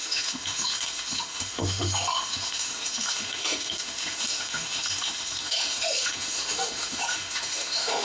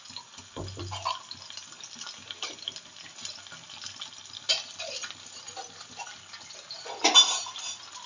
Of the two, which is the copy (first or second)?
first